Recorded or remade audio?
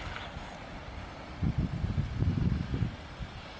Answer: recorded